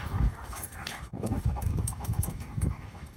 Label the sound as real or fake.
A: fake